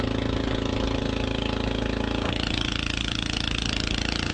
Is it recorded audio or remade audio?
recorded